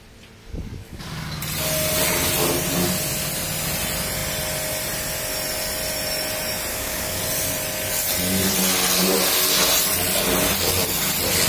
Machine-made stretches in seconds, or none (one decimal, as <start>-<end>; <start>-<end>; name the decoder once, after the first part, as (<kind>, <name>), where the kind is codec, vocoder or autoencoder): 0.4-1.4 (codec, DAC); 6.7-7.2